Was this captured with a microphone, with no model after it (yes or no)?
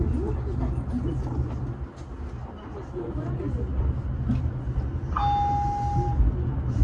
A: yes